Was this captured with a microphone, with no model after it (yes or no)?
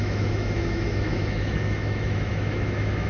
no